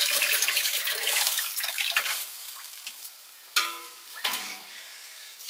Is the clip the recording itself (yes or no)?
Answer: no